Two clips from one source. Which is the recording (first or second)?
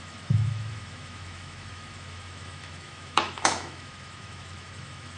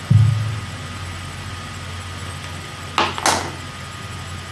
second